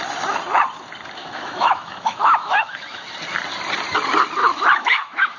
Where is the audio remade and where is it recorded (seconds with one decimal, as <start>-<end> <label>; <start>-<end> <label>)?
0.0-1.2 recorded; 1.2-3.1 remade; 3.1-4.4 recorded; 4.4-5.4 remade